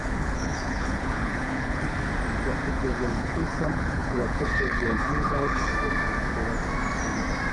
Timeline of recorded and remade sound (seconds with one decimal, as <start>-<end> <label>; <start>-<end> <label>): 0.0-2.1 remade; 2.1-2.7 recorded; 2.7-5.7 remade; 5.7-7.5 recorded